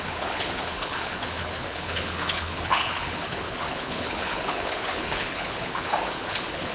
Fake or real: fake